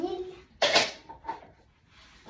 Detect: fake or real real